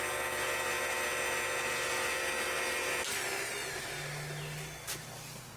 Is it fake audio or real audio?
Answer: real